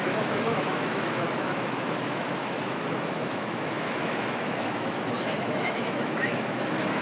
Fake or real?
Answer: fake